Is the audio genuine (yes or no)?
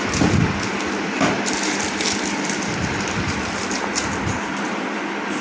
no